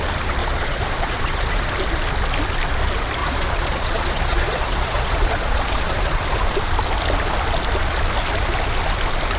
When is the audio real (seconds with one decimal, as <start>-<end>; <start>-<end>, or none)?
0.0-0.4; 1.7-3.2; 6.4-9.4